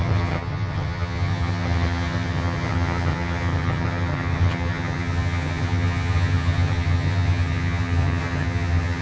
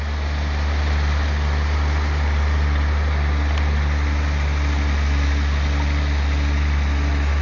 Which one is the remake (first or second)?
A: first